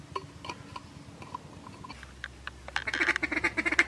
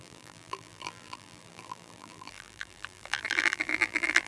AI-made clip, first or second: second